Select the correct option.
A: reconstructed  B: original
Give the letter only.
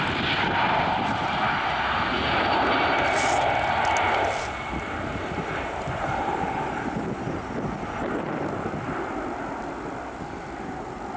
B